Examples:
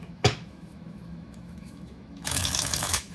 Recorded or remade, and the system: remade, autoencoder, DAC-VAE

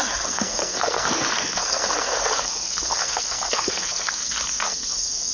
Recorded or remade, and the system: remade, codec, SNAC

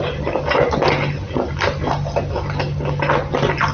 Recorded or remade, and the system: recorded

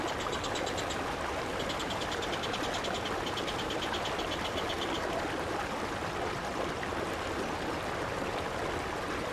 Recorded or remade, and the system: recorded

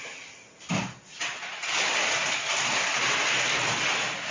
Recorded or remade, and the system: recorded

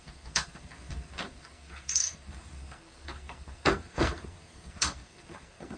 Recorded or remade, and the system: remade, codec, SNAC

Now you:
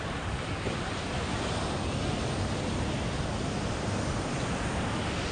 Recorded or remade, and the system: recorded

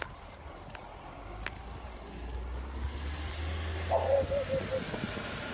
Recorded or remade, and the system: recorded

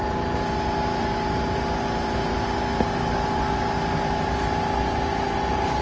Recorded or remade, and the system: recorded